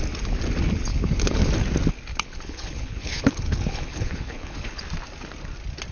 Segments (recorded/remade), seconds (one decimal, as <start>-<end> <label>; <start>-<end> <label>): 0.0-0.9 recorded; 0.9-1.5 remade; 1.5-2.1 recorded; 2.1-4.8 remade; 4.8-5.9 recorded